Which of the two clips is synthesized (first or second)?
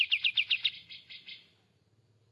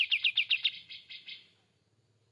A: first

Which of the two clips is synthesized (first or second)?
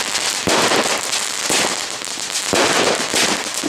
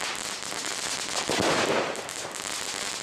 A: first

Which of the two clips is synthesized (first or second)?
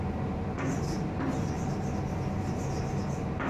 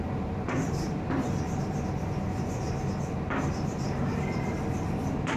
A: second